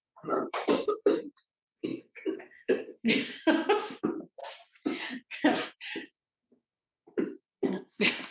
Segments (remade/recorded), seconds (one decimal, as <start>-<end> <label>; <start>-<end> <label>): 0.0-4.4 remade; 4.4-5.4 recorded; 5.4-8.3 remade